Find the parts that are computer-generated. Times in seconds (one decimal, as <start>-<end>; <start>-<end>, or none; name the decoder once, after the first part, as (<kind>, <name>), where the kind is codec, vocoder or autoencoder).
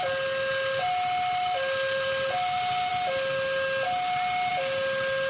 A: none